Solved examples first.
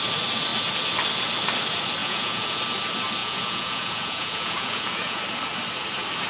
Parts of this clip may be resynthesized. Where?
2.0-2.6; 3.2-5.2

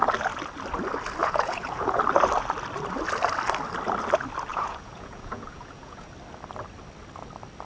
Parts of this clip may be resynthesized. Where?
1.2-2.0; 4.5-6.1

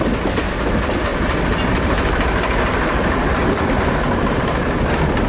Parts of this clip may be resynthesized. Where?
none

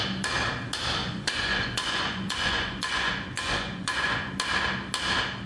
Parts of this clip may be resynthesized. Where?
1.0-4.3